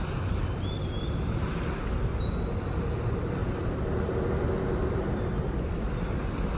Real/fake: real